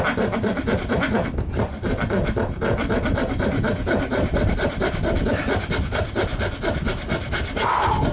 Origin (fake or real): real